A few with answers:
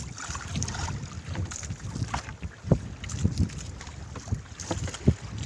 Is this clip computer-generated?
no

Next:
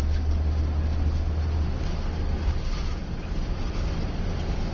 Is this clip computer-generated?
no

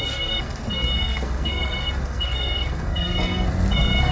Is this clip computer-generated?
yes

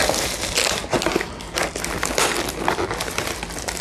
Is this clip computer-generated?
no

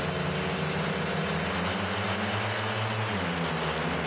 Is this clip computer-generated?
no